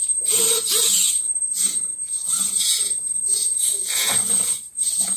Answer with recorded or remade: remade